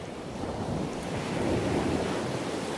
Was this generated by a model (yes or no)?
no